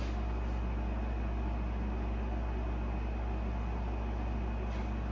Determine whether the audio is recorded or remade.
recorded